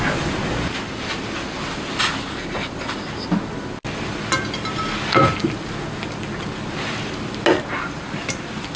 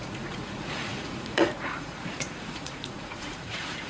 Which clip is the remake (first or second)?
second